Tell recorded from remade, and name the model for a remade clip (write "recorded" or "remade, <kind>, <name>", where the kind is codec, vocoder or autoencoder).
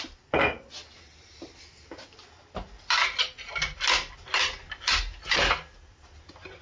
recorded